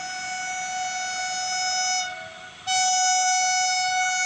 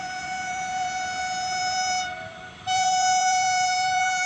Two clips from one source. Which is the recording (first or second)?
first